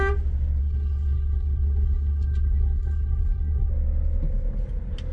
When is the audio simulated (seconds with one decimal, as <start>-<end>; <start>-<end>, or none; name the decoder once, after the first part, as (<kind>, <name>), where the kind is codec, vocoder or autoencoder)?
0.6-3.7 (codec, SNAC)